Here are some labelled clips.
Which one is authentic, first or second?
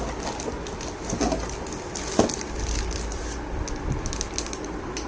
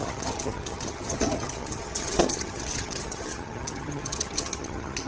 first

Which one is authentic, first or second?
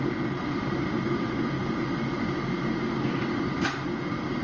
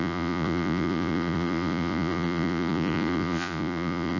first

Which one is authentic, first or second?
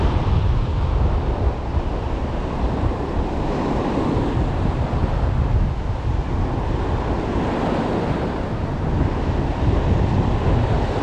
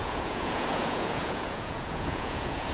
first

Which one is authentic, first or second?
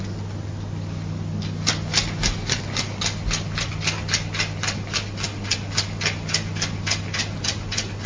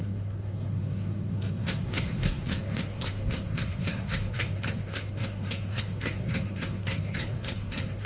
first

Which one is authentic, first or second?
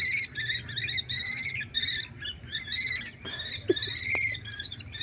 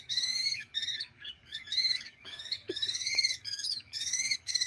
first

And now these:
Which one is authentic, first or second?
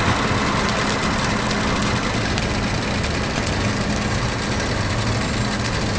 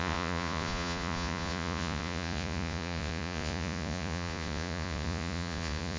first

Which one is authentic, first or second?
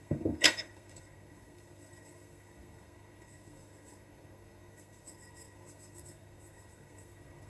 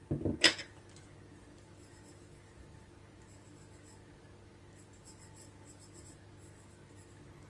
second